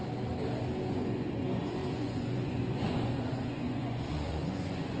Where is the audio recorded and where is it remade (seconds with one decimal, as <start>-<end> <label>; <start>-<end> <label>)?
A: 0.0-0.8 recorded; 0.8-5.0 remade